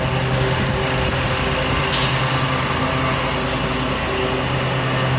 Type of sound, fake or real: real